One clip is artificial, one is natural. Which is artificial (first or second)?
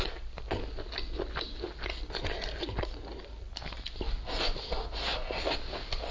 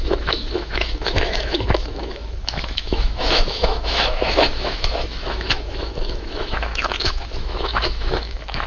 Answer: second